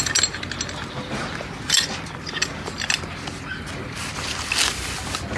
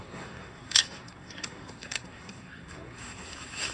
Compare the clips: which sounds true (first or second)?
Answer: first